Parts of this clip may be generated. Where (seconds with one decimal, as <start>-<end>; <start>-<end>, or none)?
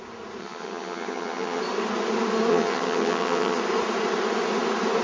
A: 0.4-1.6; 2.5-3.6